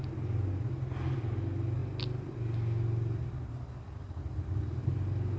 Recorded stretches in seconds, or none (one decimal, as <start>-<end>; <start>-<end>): 0.0-5.4

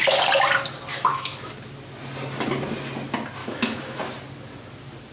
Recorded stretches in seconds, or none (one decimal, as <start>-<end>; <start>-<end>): 0.0-0.9; 1.5-3.4; 4.0-5.1

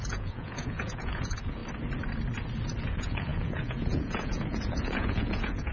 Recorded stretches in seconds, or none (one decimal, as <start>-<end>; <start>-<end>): 1.6-2.8

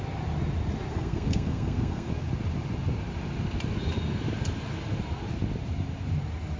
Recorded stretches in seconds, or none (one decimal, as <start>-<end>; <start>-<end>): 0.0-0.9; 2.1-6.6

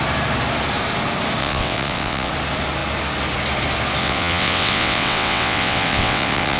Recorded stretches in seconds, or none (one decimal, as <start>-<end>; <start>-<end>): 0.0-1.4; 2.3-4.0

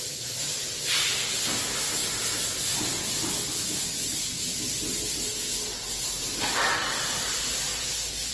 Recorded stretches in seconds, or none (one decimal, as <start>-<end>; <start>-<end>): 0.0-8.3

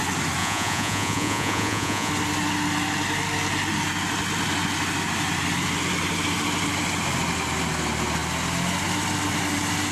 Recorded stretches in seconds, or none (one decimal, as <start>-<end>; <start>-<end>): 0.0-0.4; 2.1-9.9

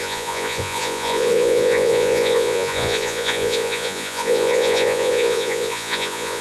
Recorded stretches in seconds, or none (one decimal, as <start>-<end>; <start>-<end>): none